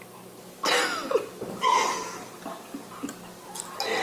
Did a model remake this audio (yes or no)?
no